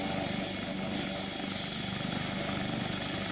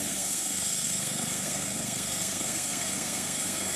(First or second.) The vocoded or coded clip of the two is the second